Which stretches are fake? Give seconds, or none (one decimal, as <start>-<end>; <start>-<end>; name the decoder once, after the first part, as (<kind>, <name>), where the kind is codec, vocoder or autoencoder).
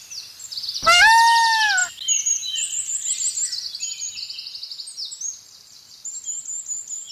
none